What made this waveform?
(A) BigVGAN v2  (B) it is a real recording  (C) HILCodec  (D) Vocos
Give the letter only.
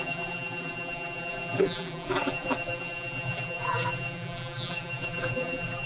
A